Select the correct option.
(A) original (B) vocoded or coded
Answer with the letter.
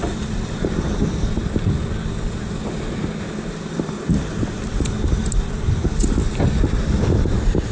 A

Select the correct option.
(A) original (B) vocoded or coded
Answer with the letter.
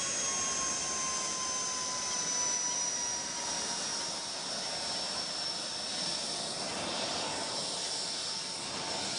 A